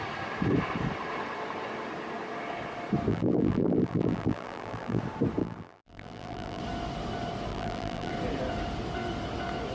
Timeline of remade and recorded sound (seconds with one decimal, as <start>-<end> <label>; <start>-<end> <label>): 0.0-3.1 recorded; 3.1-5.0 remade; 5.0-5.4 recorded; 5.4-6.6 remade; 6.6-7.5 recorded; 7.5-8.1 remade; 8.1-9.7 recorded